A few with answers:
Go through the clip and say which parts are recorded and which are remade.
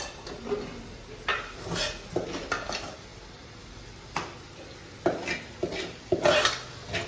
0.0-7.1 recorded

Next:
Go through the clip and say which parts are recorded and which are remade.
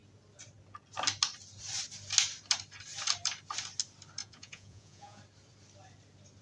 0.0-4.2 recorded; 4.2-5.2 remade; 5.2-6.4 recorded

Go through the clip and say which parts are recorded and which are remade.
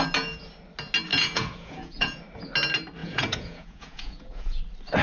0.0-1.1 recorded; 1.1-2.2 remade; 2.2-3.0 recorded; 3.0-4.6 remade; 4.6-5.0 recorded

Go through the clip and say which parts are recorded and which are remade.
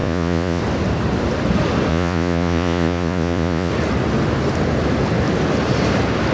0.0-0.6 remade; 0.6-1.9 recorded; 1.9-3.7 remade; 3.7-6.3 recorded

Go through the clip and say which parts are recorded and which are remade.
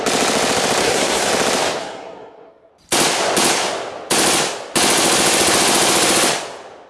0.0-0.8 recorded; 0.8-1.3 remade; 1.3-1.8 recorded; 1.8-2.7 remade; 2.7-6.9 recorded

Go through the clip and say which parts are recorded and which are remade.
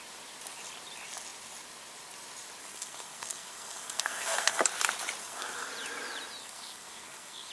0.0-2.6 recorded; 2.6-4.6 remade; 4.6-5.2 recorded; 5.2-5.7 remade; 5.7-6.4 recorded; 6.4-7.5 remade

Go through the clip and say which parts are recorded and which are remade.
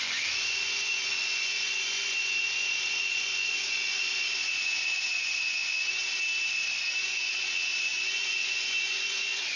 0.0-6.0 remade; 6.0-7.0 recorded; 7.0-9.6 remade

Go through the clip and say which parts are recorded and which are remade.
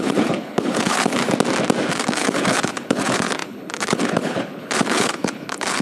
0.0-1.2 remade; 1.2-1.9 recorded; 1.9-5.8 remade